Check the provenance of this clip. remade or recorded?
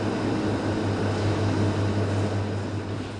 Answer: recorded